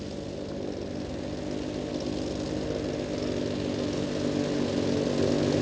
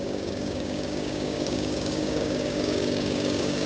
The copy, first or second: second